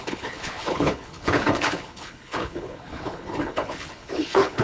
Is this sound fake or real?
fake